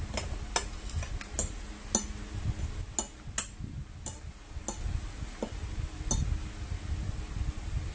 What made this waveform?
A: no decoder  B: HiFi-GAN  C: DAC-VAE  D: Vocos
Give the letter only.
A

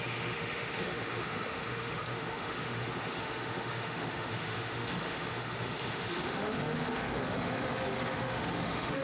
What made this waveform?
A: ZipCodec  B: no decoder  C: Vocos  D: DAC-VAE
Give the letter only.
D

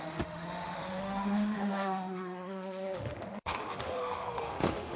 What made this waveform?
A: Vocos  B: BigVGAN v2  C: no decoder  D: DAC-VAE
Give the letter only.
D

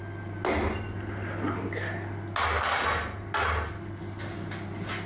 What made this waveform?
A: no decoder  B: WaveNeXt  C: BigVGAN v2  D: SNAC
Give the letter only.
A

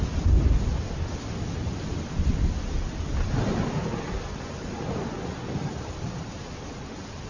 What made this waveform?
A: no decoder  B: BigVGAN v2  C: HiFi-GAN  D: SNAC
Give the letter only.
A